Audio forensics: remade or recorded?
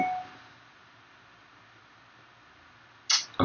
recorded